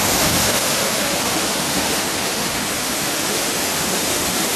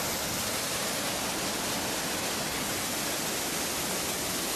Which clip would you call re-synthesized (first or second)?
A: first